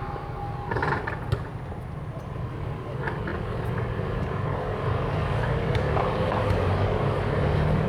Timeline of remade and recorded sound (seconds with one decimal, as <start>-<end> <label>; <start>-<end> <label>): 0.0-0.8 remade; 0.8-2.4 recorded; 2.4-7.9 remade